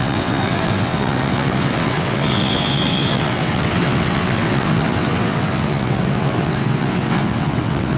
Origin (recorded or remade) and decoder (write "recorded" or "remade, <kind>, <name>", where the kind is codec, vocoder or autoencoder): remade, vocoder, WaveNeXt